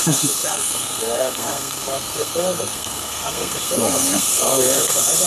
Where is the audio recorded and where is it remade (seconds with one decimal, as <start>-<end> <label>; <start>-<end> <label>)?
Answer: 0.0-5.3 remade